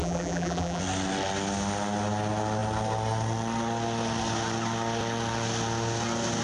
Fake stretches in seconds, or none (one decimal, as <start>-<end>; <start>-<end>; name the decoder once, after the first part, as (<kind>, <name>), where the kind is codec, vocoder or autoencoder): 0.0-0.8 (vocoder, BigVGAN v2)